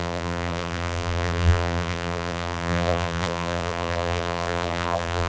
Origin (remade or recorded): remade